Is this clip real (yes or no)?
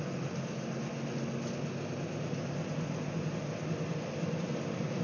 yes